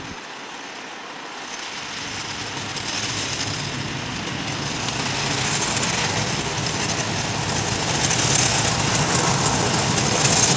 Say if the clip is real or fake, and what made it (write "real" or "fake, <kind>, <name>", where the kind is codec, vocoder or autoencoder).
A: real